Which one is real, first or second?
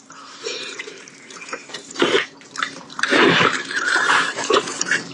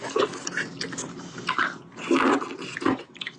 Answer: second